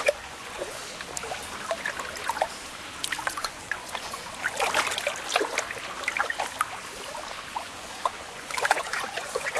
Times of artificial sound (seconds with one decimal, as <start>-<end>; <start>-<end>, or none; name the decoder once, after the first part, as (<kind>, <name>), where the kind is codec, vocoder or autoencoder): 0.0-0.8 (vocoder, Vocos); 3.3-4.2; 7.5-9.6